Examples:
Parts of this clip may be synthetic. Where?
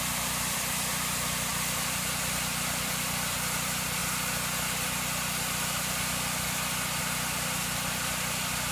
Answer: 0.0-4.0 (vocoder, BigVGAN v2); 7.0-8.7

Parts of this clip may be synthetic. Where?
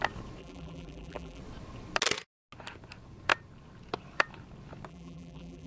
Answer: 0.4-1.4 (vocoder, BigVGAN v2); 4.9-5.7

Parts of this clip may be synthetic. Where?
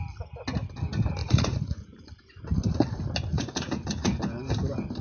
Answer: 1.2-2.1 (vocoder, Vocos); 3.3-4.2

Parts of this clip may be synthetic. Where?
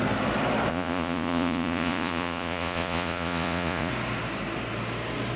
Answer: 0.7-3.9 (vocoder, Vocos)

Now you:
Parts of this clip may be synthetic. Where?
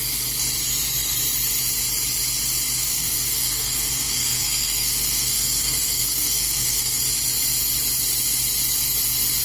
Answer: 2.8-7.0 (codec, SNAC)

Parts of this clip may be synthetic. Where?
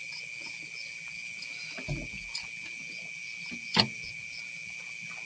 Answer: none